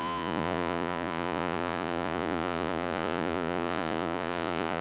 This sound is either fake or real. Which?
fake